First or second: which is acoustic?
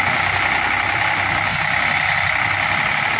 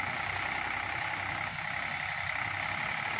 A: first